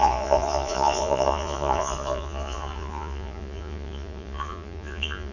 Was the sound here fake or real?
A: fake